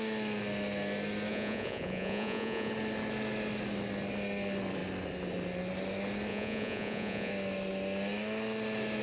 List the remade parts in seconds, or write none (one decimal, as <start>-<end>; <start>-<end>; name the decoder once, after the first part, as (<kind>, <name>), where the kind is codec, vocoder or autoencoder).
1.3-2.7 (vocoder, Vocos); 6.3-7.3